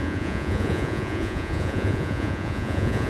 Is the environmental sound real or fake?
fake